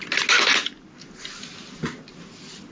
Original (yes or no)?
yes